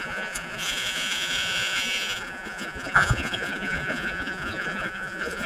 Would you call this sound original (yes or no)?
no